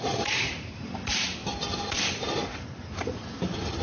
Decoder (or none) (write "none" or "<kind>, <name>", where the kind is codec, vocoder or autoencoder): vocoder, BigVGAN v2